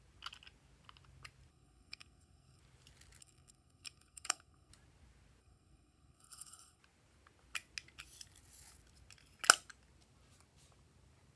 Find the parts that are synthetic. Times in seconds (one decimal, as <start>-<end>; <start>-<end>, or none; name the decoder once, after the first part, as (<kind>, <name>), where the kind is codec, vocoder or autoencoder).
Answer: 1.5-2.6 (codec, SNAC); 3.2-4.7; 5.4-6.8